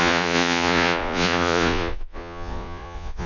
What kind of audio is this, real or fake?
fake